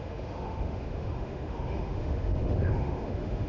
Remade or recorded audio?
remade